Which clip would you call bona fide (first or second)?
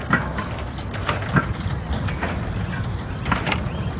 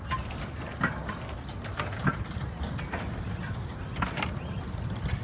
first